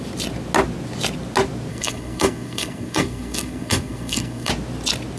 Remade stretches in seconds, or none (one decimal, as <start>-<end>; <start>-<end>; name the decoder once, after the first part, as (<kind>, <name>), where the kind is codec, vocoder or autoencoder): 1.7-4.5 (codec, SNAC)